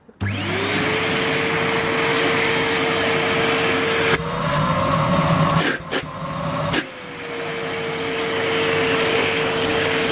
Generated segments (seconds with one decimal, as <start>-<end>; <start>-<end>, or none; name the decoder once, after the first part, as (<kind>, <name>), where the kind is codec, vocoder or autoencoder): 2.1-2.8 (codec, DAC); 9.2-10.1